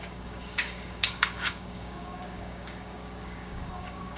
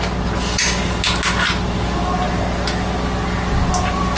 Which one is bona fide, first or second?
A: second